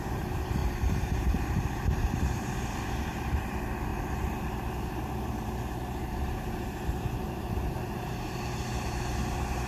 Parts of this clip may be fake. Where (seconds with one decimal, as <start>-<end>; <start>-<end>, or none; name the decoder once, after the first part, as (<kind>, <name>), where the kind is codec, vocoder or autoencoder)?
0.0-9.7 (vocoder, BigVGAN v2)